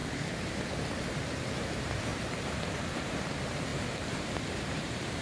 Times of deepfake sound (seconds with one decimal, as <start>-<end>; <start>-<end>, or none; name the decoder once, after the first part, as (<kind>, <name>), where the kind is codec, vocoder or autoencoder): 1.0-3.7 (vocoder, BigVGAN v2); 4.6-5.2